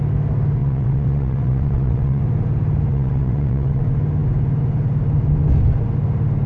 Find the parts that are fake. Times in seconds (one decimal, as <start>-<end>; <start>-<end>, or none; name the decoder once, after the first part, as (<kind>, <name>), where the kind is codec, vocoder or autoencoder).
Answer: 0.6-2.2 (vocoder, WaveNeXt); 2.9-3.8